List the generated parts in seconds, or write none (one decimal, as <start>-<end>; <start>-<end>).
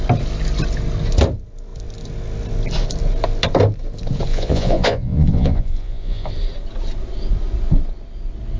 4.3-6.3